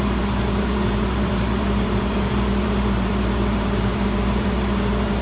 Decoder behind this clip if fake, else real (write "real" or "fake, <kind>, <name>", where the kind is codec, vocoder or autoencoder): fake, vocoder, BigVGAN v2